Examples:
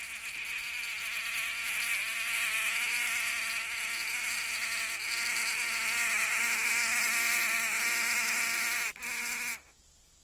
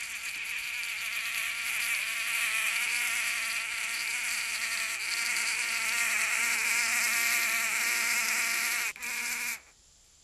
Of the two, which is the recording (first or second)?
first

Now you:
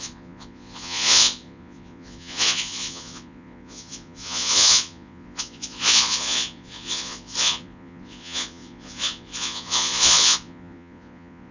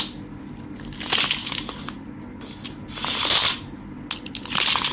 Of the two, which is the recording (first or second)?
second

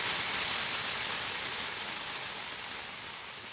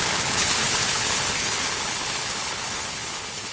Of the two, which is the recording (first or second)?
first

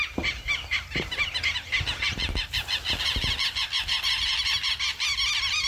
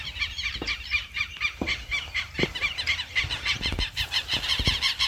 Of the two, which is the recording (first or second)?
first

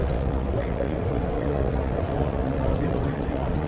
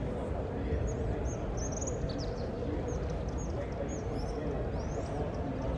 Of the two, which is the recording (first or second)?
second